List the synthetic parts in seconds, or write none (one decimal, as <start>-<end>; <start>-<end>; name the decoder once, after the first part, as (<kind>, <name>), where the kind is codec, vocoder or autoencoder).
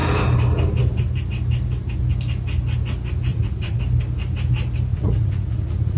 3.3-3.8 (vocoder, Vocos); 4.9-6.0